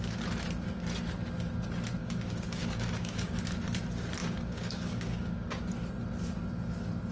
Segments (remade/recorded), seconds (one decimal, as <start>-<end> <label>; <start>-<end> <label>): 0.0-2.0 recorded; 2.0-3.4 remade; 3.4-4.2 recorded; 4.2-5.7 remade; 5.7-7.1 recorded